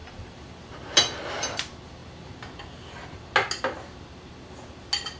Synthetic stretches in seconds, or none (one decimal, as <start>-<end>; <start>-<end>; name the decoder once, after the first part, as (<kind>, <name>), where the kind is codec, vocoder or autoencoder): 0.0-1.3 (vocoder, BigVGAN v2)